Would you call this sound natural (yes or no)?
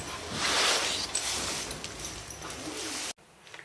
yes